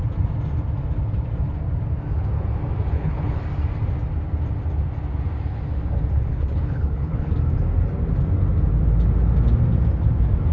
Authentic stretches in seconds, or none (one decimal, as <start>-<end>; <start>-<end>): 0.0-2.9; 3.4-6.3; 7.3-10.5